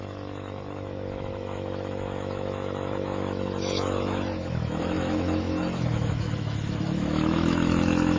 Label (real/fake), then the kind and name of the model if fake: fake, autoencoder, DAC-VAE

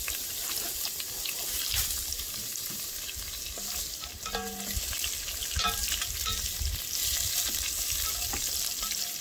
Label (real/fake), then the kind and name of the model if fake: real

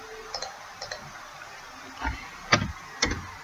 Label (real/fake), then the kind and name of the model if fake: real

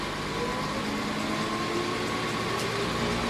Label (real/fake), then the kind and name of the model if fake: real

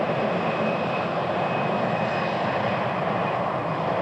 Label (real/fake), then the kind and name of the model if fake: real